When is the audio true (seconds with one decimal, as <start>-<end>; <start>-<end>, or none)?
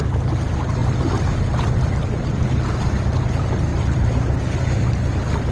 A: 0.0-3.7; 4.9-5.5